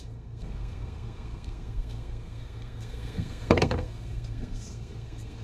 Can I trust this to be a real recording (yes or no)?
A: no